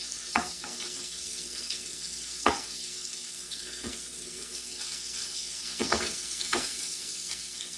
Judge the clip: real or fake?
fake